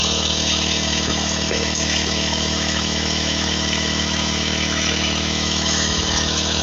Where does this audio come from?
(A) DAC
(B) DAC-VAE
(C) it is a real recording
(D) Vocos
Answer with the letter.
B